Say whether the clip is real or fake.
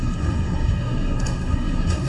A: fake